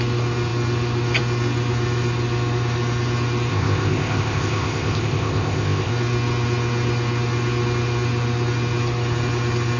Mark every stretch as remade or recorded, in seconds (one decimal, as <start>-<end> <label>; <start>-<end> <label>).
0.0-3.5 recorded; 3.5-5.9 remade; 5.9-9.8 recorded

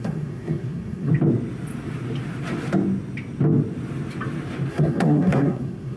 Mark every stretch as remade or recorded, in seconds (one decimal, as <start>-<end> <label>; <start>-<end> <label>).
0.0-1.1 remade; 1.1-4.7 recorded; 4.7-6.0 remade

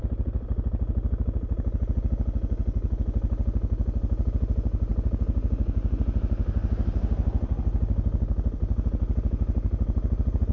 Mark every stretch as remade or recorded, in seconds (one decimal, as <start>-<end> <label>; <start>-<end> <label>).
0.0-10.5 recorded

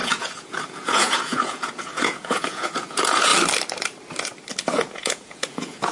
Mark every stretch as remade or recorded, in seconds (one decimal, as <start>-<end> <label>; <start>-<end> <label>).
0.0-3.3 remade; 3.3-4.6 recorded; 4.6-5.9 remade

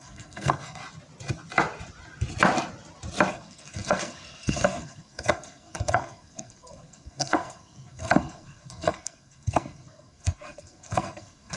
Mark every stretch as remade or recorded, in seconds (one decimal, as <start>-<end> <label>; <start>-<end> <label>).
0.0-0.8 remade; 0.8-3.3 recorded; 3.3-11.6 remade